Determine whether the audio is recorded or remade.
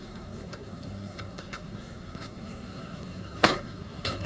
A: remade